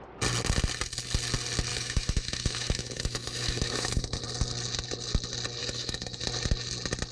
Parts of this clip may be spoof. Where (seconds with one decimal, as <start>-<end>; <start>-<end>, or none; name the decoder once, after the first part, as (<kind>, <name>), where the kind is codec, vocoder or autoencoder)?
1.7-4.2 (autoencoder, DAC-VAE); 5.6-6.2